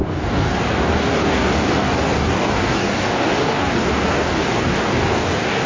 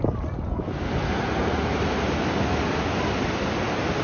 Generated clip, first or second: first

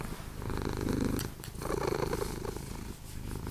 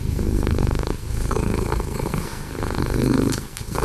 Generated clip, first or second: second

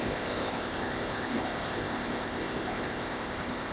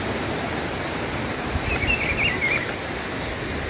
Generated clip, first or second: first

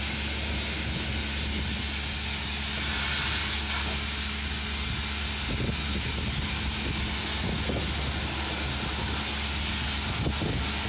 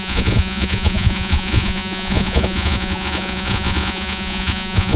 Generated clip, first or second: second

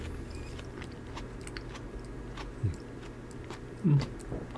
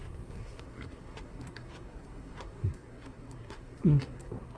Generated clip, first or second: second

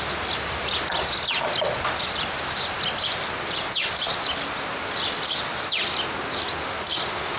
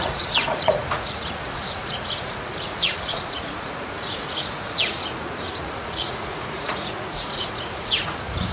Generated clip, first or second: second